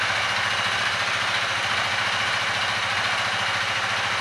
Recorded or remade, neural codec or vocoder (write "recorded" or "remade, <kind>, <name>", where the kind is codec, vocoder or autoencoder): recorded